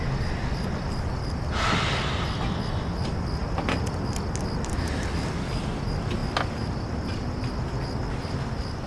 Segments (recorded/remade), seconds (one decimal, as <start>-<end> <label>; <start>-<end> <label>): 0.0-8.9 recorded